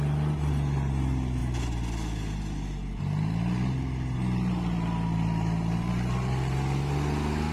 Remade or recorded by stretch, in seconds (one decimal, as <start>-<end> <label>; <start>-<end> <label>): 0.0-7.5 recorded